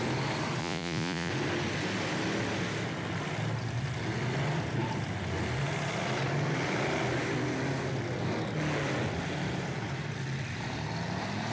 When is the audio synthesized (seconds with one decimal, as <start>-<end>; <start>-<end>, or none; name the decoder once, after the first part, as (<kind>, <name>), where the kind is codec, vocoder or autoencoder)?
0.6-1.3 (vocoder, Vocos)

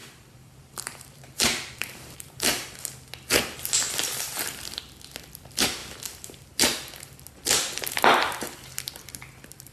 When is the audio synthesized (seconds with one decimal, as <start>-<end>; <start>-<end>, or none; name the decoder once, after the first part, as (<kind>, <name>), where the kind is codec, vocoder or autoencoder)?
0.0-2.8 (vocoder, BigVGAN v2)

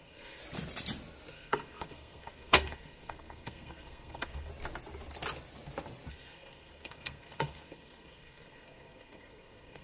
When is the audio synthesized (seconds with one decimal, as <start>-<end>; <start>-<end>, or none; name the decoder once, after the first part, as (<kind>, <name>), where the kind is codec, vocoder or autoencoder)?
0.0-0.4 (codec, SNAC); 1.3-4.5; 6.1-9.8

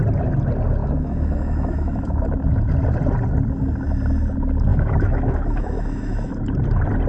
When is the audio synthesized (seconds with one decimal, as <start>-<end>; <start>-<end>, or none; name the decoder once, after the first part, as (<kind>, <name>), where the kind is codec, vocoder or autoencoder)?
0.8-2.2 (autoencoder, DAC-VAE); 4.7-6.4

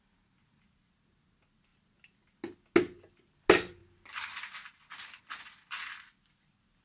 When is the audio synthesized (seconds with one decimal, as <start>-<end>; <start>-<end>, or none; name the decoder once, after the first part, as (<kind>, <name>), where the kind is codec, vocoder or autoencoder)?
none